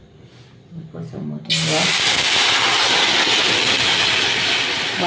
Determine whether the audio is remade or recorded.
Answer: recorded